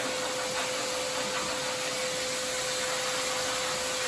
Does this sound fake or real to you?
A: real